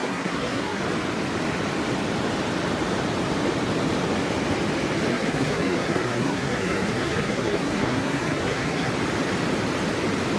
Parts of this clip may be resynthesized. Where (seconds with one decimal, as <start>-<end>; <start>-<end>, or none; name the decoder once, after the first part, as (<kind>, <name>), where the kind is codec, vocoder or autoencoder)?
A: 0.0-0.8 (codec, SNAC); 5.1-8.9